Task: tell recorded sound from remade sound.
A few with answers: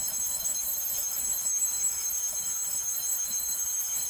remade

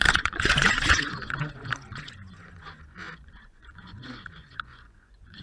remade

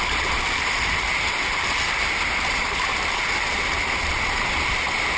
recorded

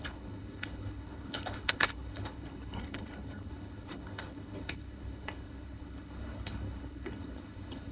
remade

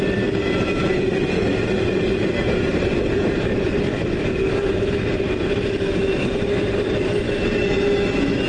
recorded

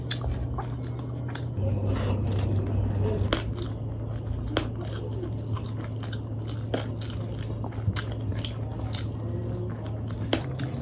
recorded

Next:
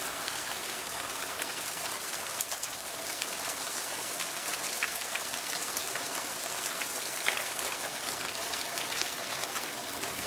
remade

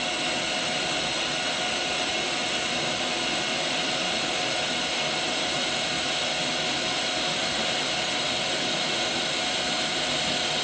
recorded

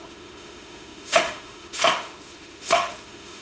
remade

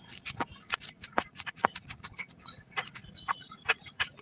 remade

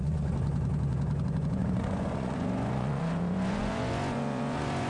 remade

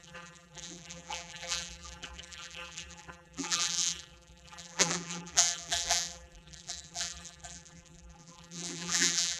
remade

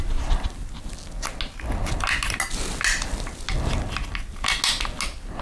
recorded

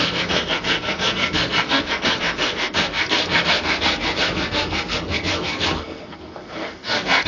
remade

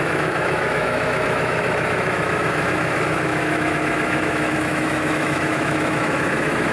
remade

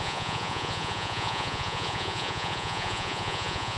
remade